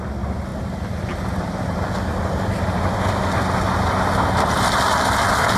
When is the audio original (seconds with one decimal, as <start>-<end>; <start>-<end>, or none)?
0.0-5.6